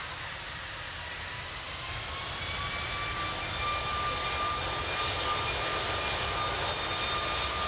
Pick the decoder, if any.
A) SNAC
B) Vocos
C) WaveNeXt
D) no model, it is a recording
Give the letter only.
D